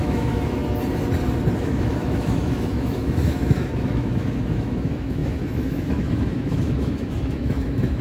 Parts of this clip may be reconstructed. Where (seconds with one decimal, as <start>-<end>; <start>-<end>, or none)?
0.0-0.6; 1.6-8.0